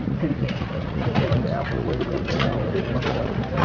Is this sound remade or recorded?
remade